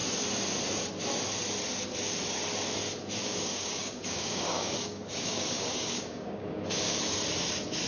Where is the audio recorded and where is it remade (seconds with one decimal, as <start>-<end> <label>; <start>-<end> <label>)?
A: 0.0-3.2 recorded; 3.2-7.0 remade; 7.0-7.9 recorded

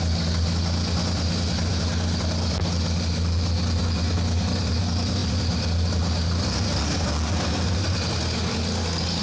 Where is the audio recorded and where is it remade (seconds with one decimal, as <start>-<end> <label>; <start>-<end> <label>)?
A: 0.0-9.2 recorded

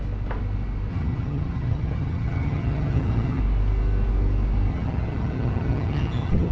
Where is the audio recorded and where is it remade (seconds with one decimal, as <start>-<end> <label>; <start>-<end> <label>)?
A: 0.0-0.9 recorded; 0.9-3.4 remade; 3.4-4.7 recorded; 4.7-6.5 remade

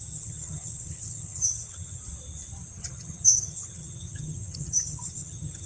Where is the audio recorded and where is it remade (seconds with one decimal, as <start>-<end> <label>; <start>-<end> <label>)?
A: 0.0-2.0 remade; 2.0-2.7 recorded; 2.7-5.7 remade

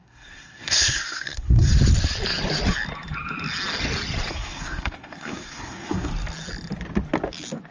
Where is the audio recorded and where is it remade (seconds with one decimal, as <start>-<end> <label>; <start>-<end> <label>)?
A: 0.0-1.7 remade; 1.7-4.3 recorded; 4.3-6.1 remade; 6.1-7.7 recorded

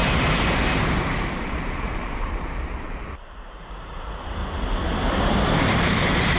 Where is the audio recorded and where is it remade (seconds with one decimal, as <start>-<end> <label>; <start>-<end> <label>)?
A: 0.0-1.3 recorded; 1.3-4.4 remade; 4.4-5.2 recorded; 5.2-6.4 remade

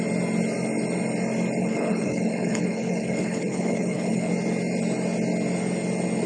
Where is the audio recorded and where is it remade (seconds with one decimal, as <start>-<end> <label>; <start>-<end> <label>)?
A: 0.0-1.6 recorded; 1.6-4.3 remade; 4.3-6.3 recorded

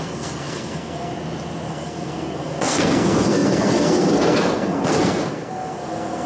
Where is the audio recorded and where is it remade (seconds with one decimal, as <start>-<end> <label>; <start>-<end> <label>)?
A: 0.0-1.1 remade; 1.1-1.7 recorded; 1.7-6.3 remade